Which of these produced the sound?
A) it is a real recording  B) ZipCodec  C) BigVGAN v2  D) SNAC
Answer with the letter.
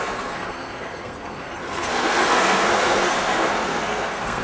D